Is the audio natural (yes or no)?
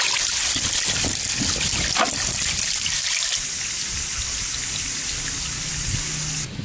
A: yes